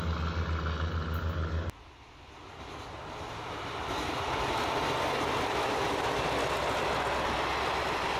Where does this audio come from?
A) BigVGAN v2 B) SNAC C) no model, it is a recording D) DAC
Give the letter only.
C